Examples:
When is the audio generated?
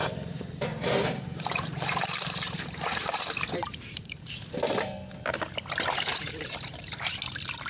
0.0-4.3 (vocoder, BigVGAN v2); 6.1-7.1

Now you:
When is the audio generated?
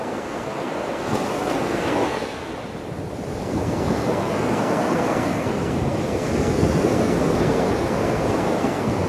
0.0-2.5 (codec, SNAC); 3.4-9.1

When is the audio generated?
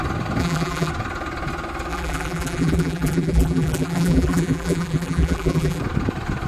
0.4-0.9 (vocoder, BigVGAN v2); 1.9-5.8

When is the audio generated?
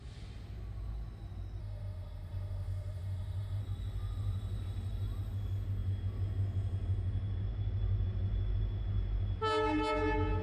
1.6-3.6 (autoencoder, DAC-VAE)